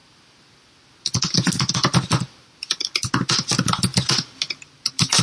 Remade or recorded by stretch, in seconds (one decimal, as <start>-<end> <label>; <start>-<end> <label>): 0.0-5.2 recorded